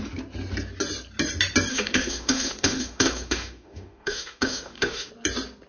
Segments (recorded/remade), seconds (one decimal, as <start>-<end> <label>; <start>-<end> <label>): 0.0-1.7 recorded; 1.7-5.1 remade; 5.1-5.7 recorded